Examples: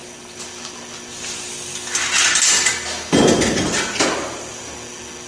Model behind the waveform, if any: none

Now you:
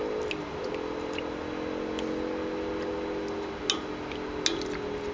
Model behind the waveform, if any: none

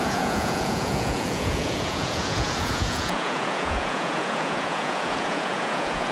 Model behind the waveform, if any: vocoder, Vocos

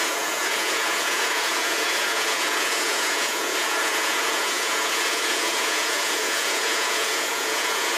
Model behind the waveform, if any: vocoder, Vocos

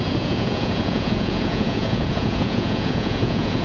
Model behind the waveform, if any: vocoder, Vocos